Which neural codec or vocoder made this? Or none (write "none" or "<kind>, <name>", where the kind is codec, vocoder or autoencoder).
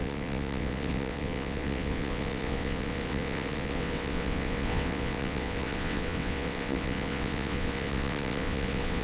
vocoder, WaveNeXt